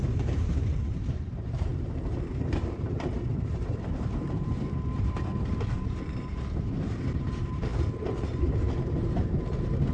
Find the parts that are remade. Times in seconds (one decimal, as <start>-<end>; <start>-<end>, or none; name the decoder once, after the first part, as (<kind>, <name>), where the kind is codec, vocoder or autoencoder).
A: 0.0-9.9 (vocoder, BigVGAN v2)